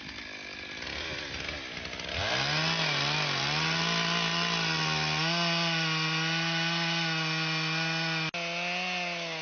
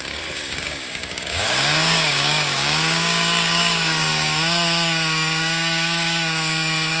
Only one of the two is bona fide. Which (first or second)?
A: first